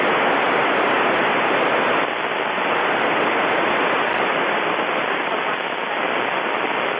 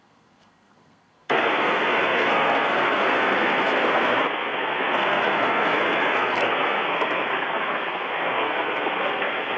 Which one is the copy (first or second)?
second